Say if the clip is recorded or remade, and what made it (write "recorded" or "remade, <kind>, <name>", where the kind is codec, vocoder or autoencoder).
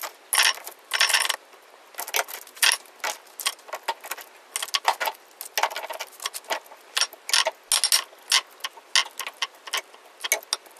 recorded